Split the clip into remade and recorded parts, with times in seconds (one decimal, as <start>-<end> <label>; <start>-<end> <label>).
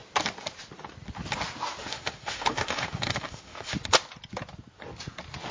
0.0-1.8 recorded; 1.8-3.7 remade; 3.7-5.5 recorded